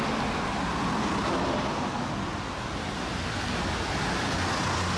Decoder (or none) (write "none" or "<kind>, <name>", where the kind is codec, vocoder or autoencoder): none